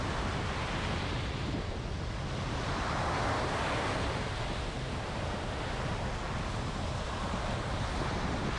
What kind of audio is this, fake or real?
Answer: real